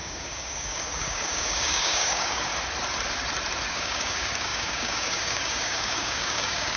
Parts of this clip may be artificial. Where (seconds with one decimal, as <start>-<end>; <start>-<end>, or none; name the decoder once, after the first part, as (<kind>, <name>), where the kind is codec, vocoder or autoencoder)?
0.0-2.5 (codec, DAC); 3.7-6.8